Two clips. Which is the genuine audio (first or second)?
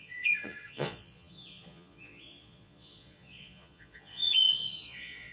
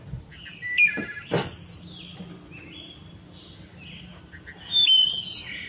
second